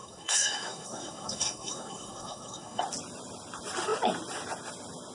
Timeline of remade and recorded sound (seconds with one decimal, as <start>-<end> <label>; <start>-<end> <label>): 0.0-2.8 remade; 2.8-5.1 recorded